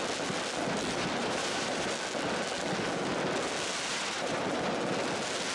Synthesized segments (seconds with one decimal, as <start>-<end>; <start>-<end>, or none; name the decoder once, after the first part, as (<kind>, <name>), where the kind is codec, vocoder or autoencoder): 1.2-1.9 (vocoder, BigVGAN v2); 3.9-4.4